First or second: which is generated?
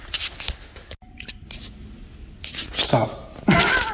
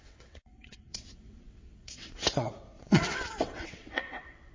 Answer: second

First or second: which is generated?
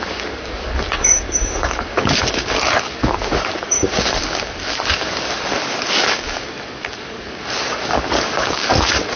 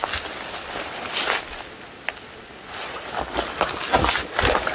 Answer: first